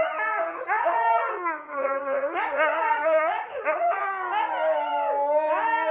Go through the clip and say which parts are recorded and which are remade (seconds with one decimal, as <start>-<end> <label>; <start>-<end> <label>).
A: 0.0-0.5 recorded; 0.5-4.0 remade; 4.0-5.9 recorded